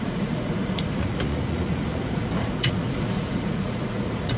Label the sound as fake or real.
fake